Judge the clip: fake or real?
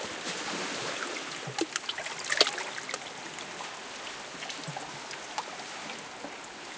real